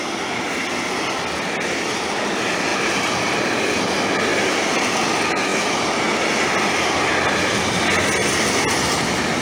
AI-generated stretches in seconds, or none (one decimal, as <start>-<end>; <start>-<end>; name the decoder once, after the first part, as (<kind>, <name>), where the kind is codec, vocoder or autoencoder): none